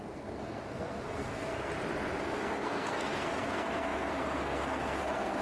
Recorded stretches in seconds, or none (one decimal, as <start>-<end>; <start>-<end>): 1.7-2.2